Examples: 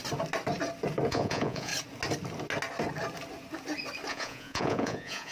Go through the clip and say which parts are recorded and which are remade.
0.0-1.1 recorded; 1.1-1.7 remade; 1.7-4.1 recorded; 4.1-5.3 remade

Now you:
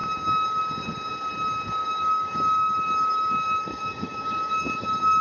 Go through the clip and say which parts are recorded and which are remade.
0.0-1.8 recorded; 1.8-5.2 remade

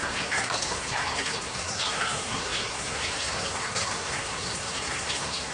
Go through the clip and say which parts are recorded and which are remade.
0.0-5.5 remade

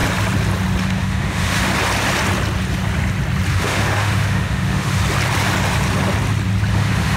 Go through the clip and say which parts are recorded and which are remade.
0.0-0.8 recorded; 0.8-1.7 remade; 1.7-3.5 recorded; 3.5-5.0 remade; 5.0-6.7 recorded; 6.7-7.2 remade

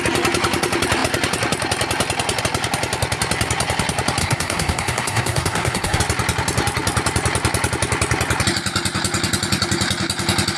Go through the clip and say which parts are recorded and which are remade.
0.0-4.2 recorded; 4.2-6.0 remade; 6.0-10.6 recorded